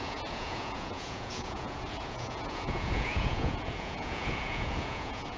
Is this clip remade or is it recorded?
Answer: remade